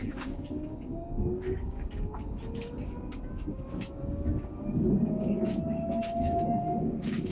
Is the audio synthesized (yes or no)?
yes